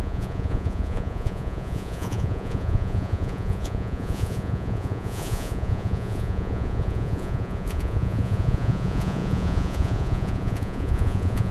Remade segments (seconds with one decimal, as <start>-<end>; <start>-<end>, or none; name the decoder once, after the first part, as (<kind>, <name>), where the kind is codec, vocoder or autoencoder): 0.0-11.5 (vocoder, Vocos)

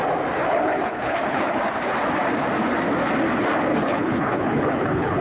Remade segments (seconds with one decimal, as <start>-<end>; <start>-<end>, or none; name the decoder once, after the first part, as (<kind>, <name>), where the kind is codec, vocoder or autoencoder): 0.4-1.6 (codec, HILCodec); 3.7-5.2

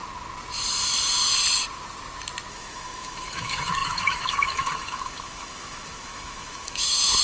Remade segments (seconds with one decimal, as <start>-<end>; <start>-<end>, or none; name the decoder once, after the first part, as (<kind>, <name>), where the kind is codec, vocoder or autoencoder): 2.5-7.2 (autoencoder, DAC-VAE)